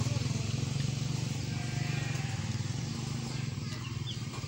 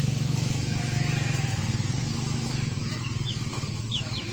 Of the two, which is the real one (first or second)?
first